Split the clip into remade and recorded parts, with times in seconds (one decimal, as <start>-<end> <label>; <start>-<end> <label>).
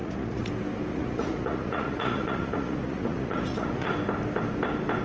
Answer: 0.0-0.5 remade; 0.5-0.9 recorded; 0.9-3.9 remade; 3.9-5.0 recorded